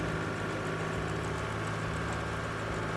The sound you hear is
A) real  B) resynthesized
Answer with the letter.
A